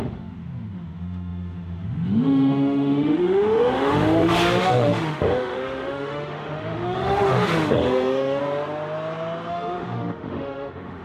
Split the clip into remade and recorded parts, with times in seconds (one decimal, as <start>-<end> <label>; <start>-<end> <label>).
0.0-8.4 remade; 8.4-9.5 recorded; 9.5-11.0 remade

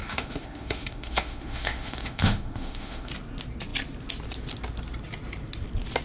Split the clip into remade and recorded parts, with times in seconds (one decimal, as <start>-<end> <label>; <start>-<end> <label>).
0.0-3.1 remade; 3.1-6.0 recorded